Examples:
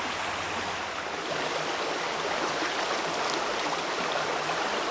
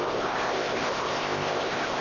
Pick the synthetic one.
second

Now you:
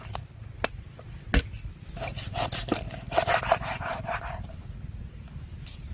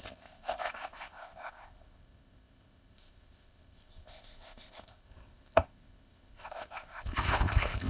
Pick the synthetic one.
second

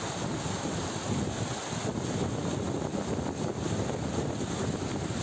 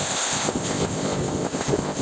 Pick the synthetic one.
second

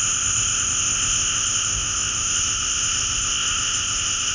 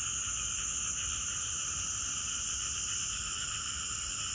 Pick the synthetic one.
first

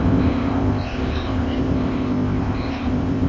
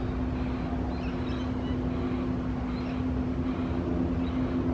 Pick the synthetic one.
first